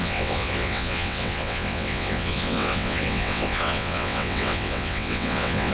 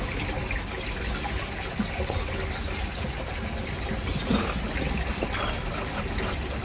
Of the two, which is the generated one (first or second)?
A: first